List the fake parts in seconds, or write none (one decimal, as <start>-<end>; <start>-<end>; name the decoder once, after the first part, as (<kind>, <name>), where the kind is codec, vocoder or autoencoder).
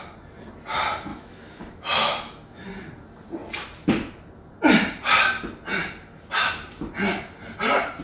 1.1-2.7 (autoencoder, DAC-VAE)